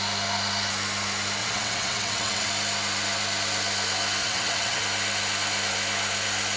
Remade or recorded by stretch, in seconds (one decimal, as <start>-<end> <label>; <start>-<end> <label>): 0.0-1.4 recorded; 1.4-2.5 remade; 2.5-4.2 recorded; 4.2-4.8 remade; 4.8-6.6 recorded